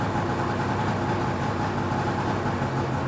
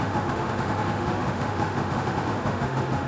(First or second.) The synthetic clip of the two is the second